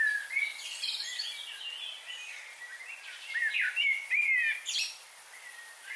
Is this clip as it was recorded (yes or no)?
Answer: yes